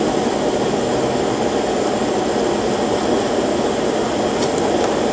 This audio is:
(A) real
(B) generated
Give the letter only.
A